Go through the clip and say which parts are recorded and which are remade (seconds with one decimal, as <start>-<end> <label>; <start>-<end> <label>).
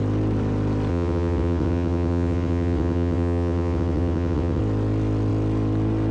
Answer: 0.0-0.9 recorded; 0.9-4.6 remade; 4.6-6.1 recorded